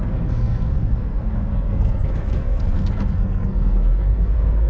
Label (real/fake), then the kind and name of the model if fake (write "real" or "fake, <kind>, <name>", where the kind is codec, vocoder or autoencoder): fake, codec, SNAC